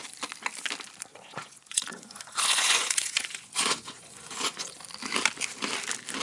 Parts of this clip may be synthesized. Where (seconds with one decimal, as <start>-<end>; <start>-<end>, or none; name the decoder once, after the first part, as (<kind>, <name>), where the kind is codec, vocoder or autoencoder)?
1.1-4.8 (vocoder, Vocos)